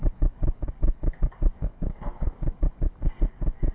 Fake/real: fake